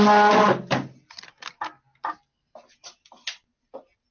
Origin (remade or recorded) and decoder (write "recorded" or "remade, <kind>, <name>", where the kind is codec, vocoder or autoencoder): recorded